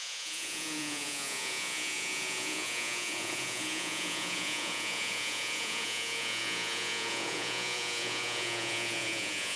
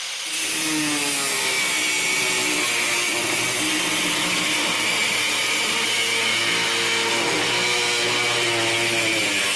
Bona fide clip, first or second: second